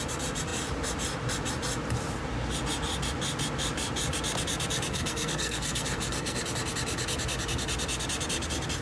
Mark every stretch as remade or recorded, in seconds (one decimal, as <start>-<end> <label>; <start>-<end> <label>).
0.0-4.9 recorded; 4.9-6.4 remade; 6.4-8.8 recorded